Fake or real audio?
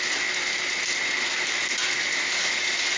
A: real